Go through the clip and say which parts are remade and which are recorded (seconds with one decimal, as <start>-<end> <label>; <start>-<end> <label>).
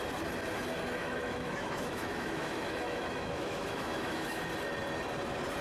0.0-1.0 recorded; 1.0-4.4 remade; 4.4-5.6 recorded